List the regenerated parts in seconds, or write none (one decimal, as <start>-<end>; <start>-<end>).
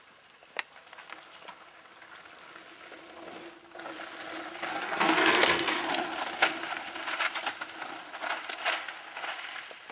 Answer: 4.7-5.8